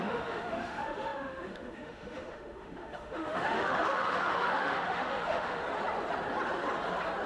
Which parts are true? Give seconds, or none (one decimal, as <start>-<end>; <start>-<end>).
5.6-7.3